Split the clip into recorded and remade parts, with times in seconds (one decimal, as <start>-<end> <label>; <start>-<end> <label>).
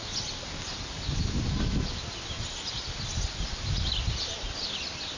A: 0.0-5.2 recorded